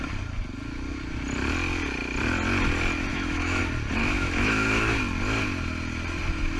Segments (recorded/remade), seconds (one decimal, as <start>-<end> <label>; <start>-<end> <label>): 0.0-3.1 recorded; 3.1-3.6 remade; 3.6-4.0 recorded; 4.0-4.9 remade; 4.9-6.6 recorded